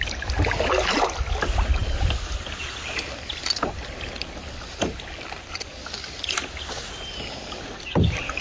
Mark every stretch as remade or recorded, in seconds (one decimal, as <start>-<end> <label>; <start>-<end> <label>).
0.0-8.4 recorded